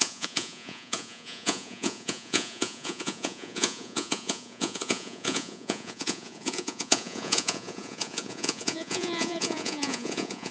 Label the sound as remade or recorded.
remade